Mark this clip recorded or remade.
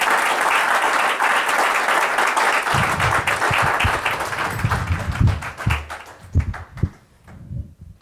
recorded